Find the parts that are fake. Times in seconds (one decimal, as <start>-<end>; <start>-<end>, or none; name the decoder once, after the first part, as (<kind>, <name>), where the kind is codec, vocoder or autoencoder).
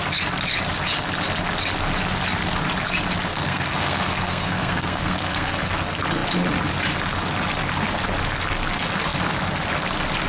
3.3-5.7 (codec, SNAC)